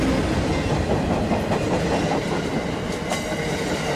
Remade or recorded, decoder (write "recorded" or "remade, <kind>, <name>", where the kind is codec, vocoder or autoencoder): recorded